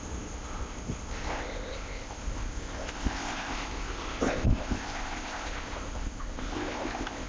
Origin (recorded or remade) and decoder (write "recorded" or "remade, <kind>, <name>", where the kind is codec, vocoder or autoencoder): remade, codec, ZipCodec